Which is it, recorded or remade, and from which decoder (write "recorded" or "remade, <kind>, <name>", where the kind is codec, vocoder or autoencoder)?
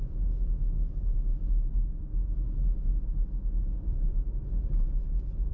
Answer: recorded